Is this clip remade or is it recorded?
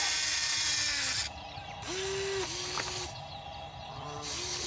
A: recorded